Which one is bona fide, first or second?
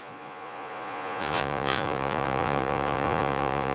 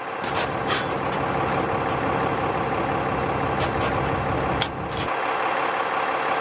second